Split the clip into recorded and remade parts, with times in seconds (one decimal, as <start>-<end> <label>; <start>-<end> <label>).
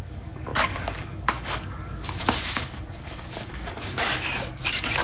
0.0-5.0 remade